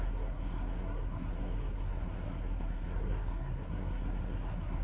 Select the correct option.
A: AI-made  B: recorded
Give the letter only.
A